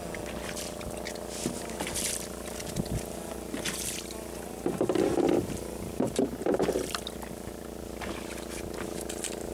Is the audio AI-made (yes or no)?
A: no